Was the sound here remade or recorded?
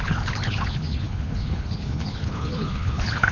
remade